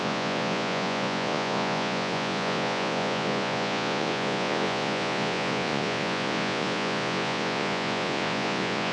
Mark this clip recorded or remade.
remade